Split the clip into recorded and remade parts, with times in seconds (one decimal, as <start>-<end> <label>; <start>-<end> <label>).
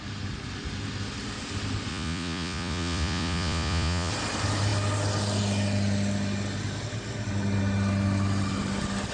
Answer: 0.0-1.9 recorded; 1.9-4.1 remade; 4.1-9.1 recorded